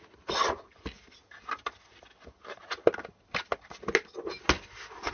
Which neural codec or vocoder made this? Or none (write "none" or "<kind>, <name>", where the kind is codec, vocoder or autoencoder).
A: none